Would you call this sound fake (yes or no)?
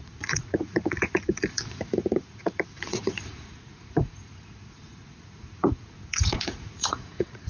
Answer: yes